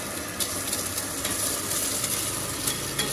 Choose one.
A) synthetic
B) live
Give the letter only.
B